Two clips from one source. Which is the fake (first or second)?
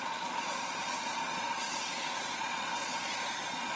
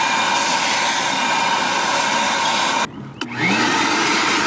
first